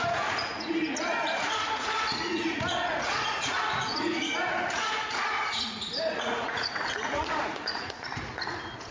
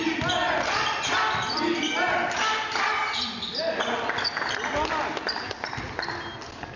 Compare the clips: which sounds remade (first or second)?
first